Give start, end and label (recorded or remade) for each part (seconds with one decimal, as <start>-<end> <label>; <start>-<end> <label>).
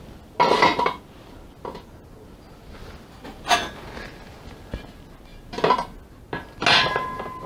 0.0-7.5 recorded